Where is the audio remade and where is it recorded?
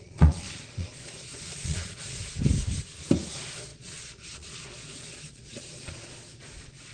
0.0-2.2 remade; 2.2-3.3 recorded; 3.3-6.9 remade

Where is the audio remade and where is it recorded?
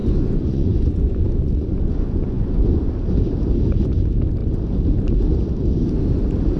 0.0-2.9 remade; 2.9-6.6 recorded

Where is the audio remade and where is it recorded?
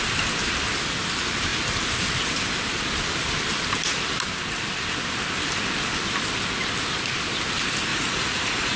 0.0-7.9 recorded; 7.9-8.8 remade